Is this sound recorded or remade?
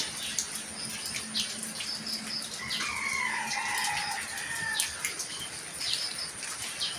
recorded